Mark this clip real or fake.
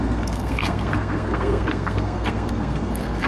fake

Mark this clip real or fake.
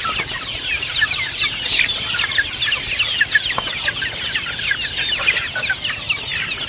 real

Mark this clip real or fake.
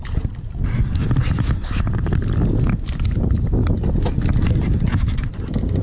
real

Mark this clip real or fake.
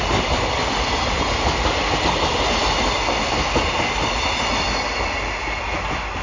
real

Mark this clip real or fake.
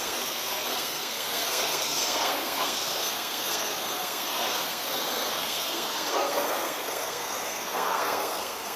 fake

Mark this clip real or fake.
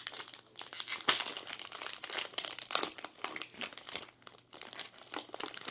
real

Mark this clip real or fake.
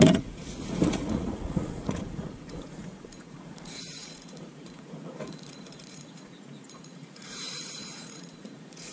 fake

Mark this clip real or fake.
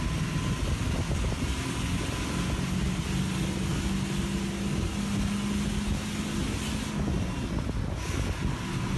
real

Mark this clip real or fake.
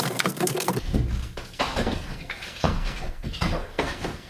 fake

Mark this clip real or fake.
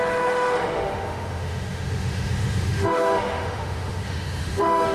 fake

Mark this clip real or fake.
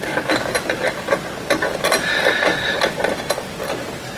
real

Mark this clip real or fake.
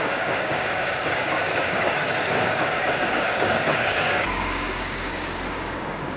fake